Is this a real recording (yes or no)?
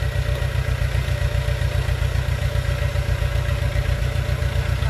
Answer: yes